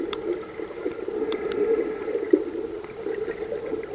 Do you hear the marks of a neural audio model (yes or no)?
yes